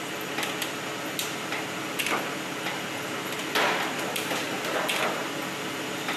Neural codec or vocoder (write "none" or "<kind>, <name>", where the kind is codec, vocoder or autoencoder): none